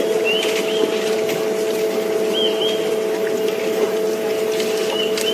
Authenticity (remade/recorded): recorded